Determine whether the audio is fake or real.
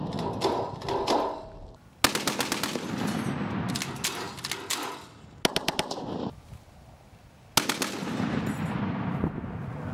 real